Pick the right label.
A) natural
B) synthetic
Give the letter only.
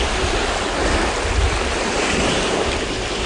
A